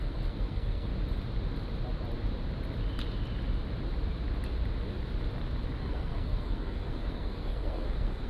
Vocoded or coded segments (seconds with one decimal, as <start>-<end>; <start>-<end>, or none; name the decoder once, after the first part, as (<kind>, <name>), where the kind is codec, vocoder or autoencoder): 0.0-0.9 (codec, SNAC); 5.8-8.3